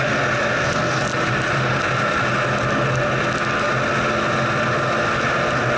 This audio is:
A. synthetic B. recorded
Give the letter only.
B